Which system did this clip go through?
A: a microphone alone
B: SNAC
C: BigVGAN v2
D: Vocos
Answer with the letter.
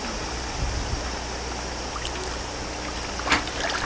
A